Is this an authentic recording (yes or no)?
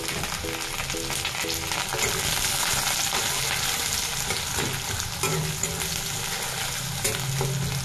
yes